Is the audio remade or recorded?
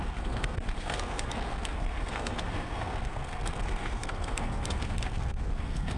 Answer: remade